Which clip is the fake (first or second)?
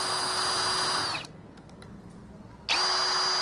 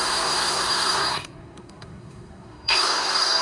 second